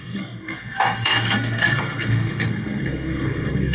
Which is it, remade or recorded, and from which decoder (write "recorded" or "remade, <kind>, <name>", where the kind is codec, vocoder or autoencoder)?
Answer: remade, codec, SNAC